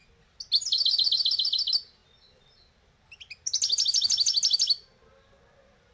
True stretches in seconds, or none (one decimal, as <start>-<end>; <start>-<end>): 0.0-5.9